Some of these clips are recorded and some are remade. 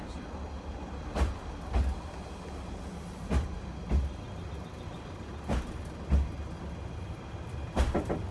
recorded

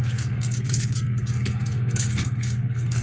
remade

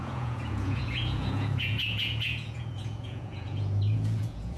remade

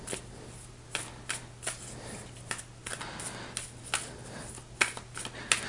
recorded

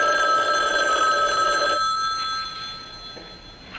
recorded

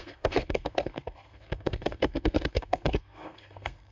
remade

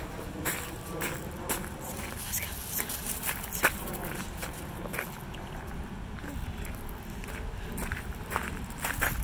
recorded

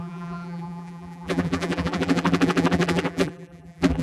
remade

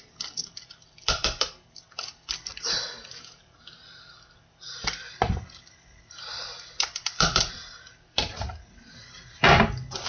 remade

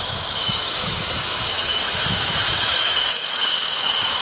remade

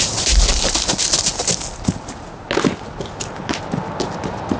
recorded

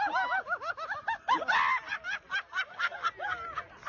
recorded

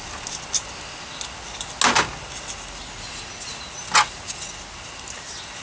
recorded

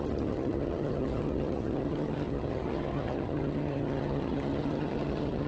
remade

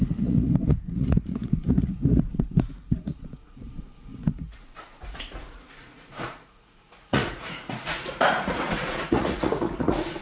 remade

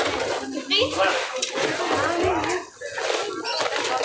recorded